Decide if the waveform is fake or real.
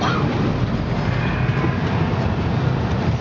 real